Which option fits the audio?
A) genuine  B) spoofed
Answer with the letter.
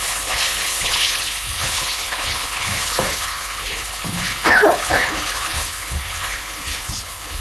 B